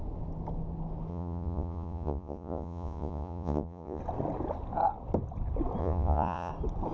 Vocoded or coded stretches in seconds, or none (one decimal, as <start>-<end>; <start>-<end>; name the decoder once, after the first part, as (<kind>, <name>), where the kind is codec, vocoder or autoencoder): 1.1-4.0 (vocoder, Vocos); 5.8-6.5